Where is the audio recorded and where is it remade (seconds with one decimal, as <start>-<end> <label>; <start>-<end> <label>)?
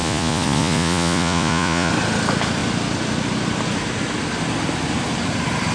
0.0-1.9 remade; 1.9-5.7 recorded